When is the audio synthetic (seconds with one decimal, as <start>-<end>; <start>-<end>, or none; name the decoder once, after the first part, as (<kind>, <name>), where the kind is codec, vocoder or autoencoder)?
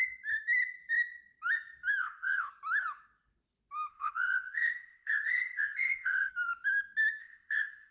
2.0-2.5 (codec, ZipCodec); 3.9-6.3; 7.2-7.9